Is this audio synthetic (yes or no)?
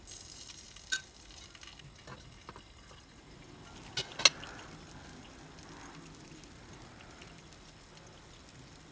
no